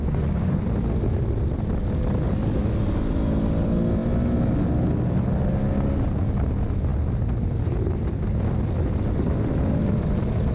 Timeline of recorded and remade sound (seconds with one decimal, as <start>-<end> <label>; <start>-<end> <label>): 0.0-0.6 remade; 0.6-10.5 recorded